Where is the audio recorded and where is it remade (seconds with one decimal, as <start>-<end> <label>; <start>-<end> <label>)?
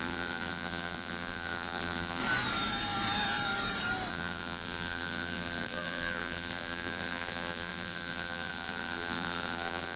0.0-2.2 remade; 2.2-4.1 recorded; 4.1-10.0 remade